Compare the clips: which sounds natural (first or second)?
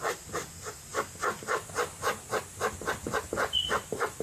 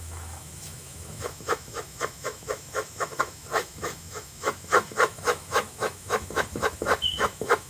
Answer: first